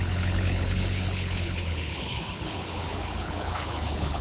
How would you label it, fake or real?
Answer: fake